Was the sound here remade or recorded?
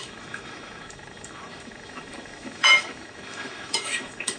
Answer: remade